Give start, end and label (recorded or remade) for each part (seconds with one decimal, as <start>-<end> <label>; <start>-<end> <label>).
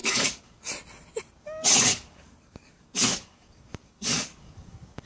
0.0-0.7 remade; 0.7-1.9 recorded; 1.9-5.1 remade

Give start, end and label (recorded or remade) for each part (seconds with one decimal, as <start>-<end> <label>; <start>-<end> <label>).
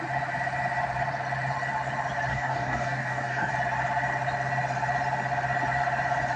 0.0-2.3 recorded; 2.3-3.5 remade; 3.5-6.4 recorded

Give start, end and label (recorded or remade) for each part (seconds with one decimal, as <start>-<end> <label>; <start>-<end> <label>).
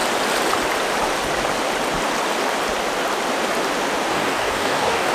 0.0-4.1 recorded; 4.1-5.1 remade